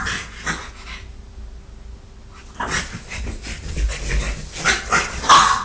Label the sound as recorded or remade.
recorded